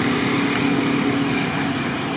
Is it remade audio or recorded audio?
recorded